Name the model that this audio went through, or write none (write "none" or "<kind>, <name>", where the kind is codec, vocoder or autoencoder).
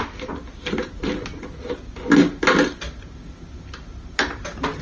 none